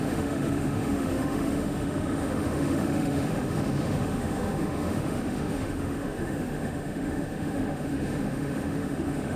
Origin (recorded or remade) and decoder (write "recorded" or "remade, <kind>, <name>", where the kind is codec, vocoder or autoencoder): remade, autoencoder, DAC-VAE